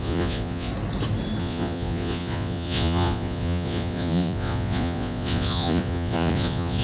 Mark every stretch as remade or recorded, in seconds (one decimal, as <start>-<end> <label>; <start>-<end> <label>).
0.0-0.7 remade; 0.7-1.4 recorded; 1.4-6.8 remade